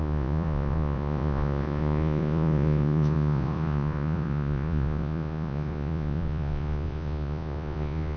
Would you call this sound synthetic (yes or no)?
yes